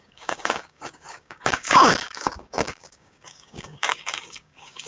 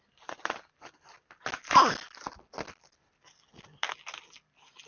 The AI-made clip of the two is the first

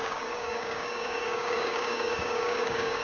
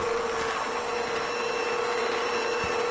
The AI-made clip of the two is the first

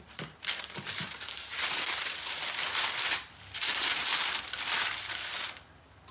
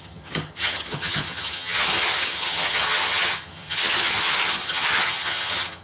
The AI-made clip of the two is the second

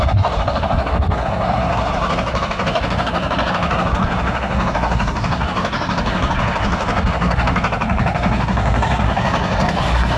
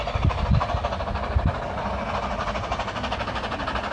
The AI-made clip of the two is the first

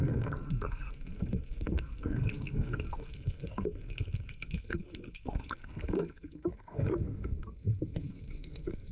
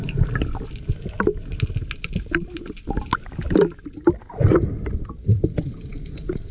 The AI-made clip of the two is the first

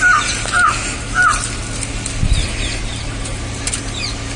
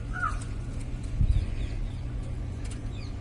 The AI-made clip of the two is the second